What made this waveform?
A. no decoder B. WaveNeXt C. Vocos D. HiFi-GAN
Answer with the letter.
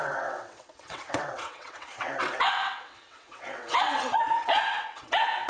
B